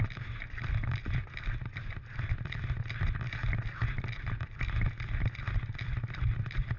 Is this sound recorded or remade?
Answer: recorded